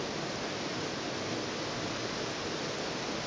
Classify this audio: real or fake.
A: real